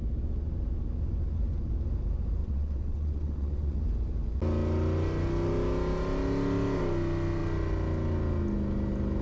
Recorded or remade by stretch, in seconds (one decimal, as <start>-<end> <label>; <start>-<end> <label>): 0.0-2.4 recorded; 2.4-3.8 remade; 3.8-9.2 recorded